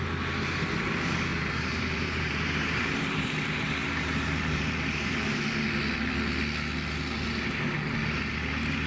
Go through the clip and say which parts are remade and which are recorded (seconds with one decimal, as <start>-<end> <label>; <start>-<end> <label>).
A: 0.0-1.3 recorded; 1.3-5.4 remade; 5.4-8.0 recorded; 8.0-8.9 remade

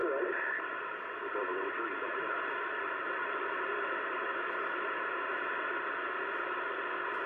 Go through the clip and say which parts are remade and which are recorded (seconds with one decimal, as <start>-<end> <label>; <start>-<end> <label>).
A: 0.0-4.4 remade; 4.4-7.3 recorded

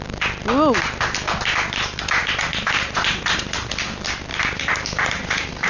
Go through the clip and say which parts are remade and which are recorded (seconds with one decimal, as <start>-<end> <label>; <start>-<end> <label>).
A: 0.0-2.2 recorded; 2.2-3.7 remade; 3.7-4.3 recorded; 4.3-5.7 remade

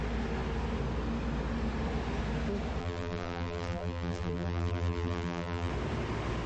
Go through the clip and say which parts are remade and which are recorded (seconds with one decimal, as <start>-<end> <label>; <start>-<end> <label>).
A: 0.0-2.8 recorded; 2.8-5.7 remade; 5.7-6.5 recorded

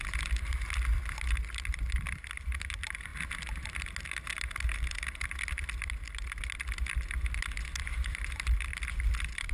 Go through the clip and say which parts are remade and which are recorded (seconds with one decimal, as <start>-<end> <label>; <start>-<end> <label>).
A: 0.0-9.5 recorded

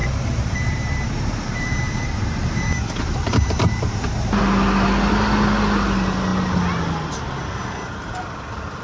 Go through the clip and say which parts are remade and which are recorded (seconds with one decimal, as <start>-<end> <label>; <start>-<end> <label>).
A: 0.0-4.4 remade; 4.4-8.8 recorded